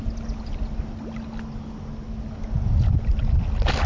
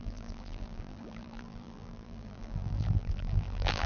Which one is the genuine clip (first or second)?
first